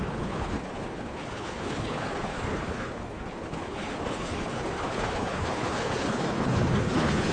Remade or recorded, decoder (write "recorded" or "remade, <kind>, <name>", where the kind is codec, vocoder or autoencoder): remade, codec, HILCodec